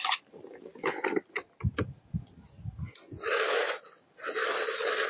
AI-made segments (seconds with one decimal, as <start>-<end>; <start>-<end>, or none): 0.0-0.7; 3.8-4.4